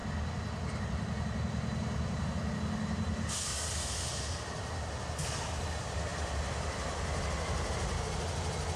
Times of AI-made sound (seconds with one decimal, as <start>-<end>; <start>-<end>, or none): 3.5-4.4; 6.1-7.2